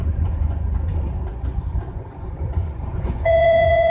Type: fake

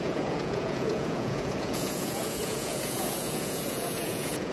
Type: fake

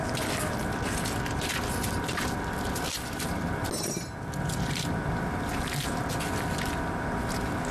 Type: real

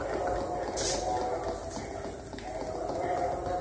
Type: real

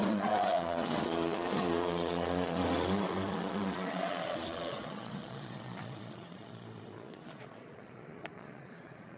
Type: fake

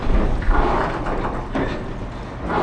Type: real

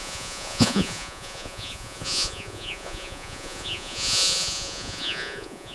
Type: fake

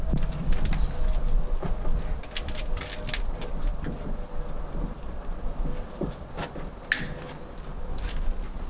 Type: real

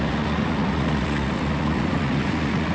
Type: fake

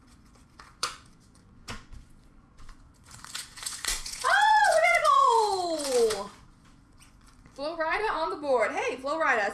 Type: fake